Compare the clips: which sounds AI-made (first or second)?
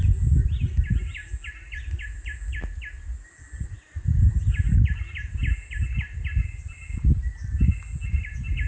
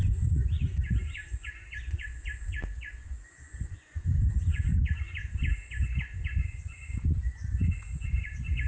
second